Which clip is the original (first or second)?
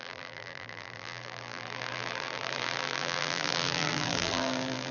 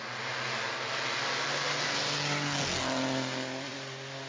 second